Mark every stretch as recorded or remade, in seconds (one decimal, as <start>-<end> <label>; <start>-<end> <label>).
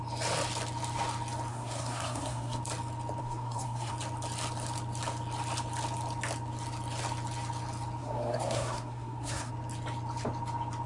0.0-1.5 recorded; 1.5-2.6 remade; 2.6-3.2 recorded; 3.2-3.9 remade; 3.9-8.0 recorded; 8.0-9.5 remade; 9.5-10.9 recorded